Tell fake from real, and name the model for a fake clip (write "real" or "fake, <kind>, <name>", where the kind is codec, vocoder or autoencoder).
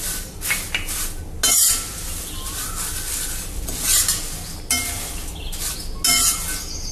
real